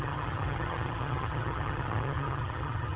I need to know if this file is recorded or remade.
remade